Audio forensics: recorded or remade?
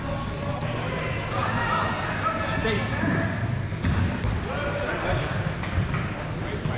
recorded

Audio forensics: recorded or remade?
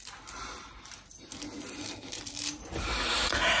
recorded